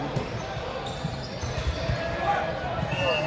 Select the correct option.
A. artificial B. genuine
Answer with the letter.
A